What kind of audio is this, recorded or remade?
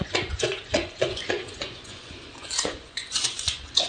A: remade